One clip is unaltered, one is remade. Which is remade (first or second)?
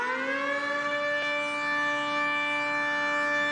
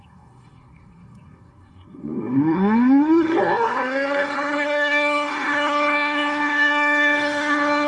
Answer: second